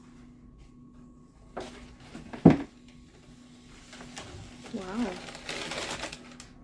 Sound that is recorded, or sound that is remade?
recorded